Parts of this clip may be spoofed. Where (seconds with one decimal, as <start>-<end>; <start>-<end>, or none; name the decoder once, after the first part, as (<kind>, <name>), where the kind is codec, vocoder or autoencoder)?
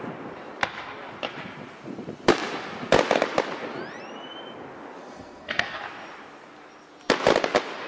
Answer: 5.0-5.8 (codec, SNAC)